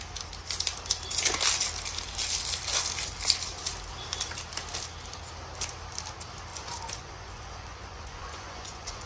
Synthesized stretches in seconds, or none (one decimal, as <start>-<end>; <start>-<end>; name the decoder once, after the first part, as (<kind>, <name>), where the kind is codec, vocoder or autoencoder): 6.5-9.1 (vocoder, Vocos)